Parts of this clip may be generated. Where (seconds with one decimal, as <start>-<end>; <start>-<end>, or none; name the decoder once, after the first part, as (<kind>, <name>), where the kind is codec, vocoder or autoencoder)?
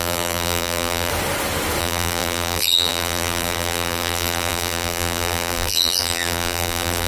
0.0-1.1 (vocoder, BigVGAN v2); 1.8-7.1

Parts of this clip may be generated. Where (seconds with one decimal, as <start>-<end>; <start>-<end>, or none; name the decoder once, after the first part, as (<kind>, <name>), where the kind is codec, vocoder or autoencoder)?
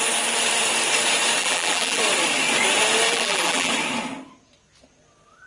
1.4-2.0 (vocoder, BigVGAN v2); 3.1-3.7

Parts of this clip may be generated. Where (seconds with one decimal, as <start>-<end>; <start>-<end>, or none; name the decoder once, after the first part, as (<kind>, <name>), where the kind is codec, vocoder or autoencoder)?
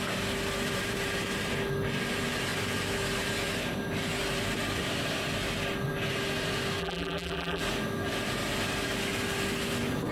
6.8-7.6 (vocoder, BigVGAN v2)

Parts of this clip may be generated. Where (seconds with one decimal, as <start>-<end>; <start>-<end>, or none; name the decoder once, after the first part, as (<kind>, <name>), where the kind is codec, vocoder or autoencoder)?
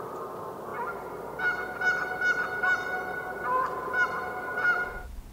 none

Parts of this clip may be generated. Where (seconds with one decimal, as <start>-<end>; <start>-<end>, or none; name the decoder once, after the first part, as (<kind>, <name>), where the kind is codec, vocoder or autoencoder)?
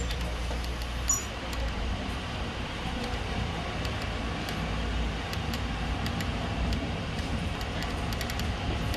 1.2-4.2 (vocoder, BigVGAN v2); 4.9-7.9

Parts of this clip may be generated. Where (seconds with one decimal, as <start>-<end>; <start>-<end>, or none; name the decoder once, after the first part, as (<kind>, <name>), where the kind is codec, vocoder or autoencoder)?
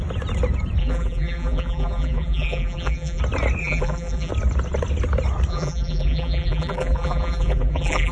0.8-3.2 (vocoder, BigVGAN v2); 3.6-4.3; 5.5-8.1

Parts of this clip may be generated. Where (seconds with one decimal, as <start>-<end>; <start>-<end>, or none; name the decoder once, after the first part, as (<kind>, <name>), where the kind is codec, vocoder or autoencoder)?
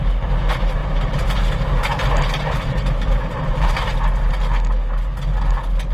0.8-4.3 (vocoder, BigVGAN v2)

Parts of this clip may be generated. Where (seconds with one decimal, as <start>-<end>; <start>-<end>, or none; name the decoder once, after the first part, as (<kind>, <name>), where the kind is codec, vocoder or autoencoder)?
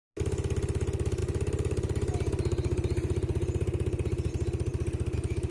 1.2-4.3 (vocoder, BigVGAN v2)